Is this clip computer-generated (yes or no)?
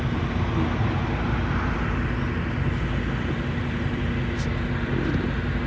no